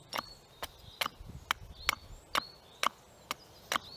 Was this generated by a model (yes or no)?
no